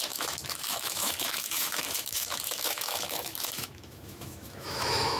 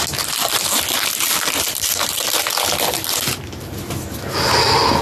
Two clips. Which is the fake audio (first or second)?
first